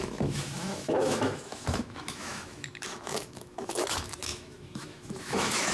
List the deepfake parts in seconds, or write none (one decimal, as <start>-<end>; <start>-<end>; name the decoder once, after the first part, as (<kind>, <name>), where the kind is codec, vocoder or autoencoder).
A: 0.0-5.7 (autoencoder, DAC-VAE)

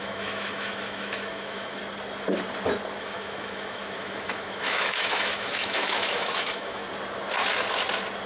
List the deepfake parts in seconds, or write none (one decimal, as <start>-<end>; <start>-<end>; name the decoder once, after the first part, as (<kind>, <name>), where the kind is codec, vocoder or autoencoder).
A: 0.0-1.8 (autoencoder, DAC-VAE); 3.0-6.8

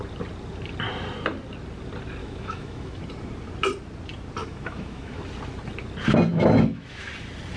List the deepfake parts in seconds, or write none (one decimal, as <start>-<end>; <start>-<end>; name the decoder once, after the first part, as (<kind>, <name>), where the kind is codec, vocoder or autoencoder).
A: 2.2-3.0 (autoencoder, DAC-VAE); 4.4-5.2; 6.3-7.1

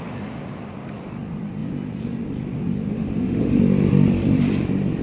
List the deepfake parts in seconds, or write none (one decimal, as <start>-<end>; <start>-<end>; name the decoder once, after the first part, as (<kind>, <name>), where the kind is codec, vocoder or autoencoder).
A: 2.9-3.6 (autoencoder, DAC-VAE)

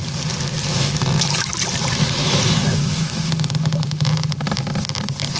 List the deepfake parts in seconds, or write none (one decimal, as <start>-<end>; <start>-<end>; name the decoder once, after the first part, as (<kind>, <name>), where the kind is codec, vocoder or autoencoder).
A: 0.7-1.5 (autoencoder, DAC-VAE); 2.2-3.3